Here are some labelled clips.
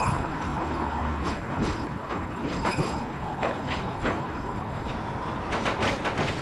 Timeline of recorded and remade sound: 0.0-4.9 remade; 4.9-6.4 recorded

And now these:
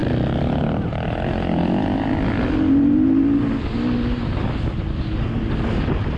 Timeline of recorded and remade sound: 0.0-6.2 recorded

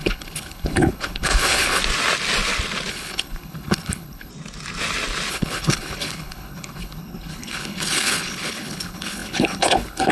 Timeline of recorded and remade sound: 0.0-1.8 remade; 1.8-2.9 recorded; 2.9-4.3 remade; 4.3-5.3 recorded; 5.3-10.1 remade

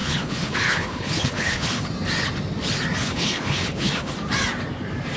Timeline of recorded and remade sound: 0.0-1.9 remade; 1.9-3.0 recorded; 3.0-4.1 remade; 4.1-5.2 recorded

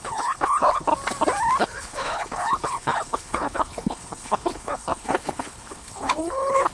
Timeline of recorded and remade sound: 0.0-0.9 remade; 0.9-1.6 recorded; 1.6-6.7 remade

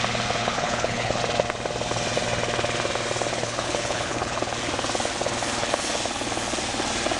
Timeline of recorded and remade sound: 0.0-0.4 recorded; 0.4-1.2 remade; 1.2-3.3 recorded; 3.3-4.4 remade; 4.4-7.2 recorded

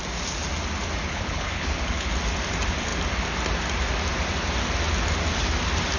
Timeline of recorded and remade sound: 0.0-1.1 recorded; 1.1-2.1 remade; 2.1-6.0 recorded